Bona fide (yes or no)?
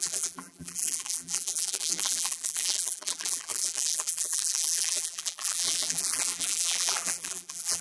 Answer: no